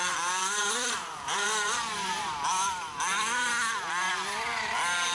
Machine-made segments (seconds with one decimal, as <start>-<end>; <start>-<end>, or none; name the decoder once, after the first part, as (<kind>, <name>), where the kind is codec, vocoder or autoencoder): 0.4-3.5 (vocoder, BigVGAN v2)